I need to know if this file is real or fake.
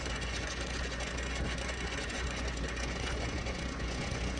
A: fake